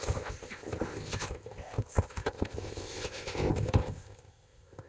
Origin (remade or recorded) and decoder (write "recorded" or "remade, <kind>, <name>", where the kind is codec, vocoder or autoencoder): remade, codec, ZipCodec